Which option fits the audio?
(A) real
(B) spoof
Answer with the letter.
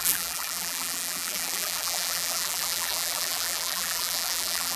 B